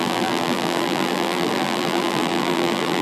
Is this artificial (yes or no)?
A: yes